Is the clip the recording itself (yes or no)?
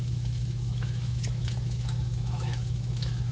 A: no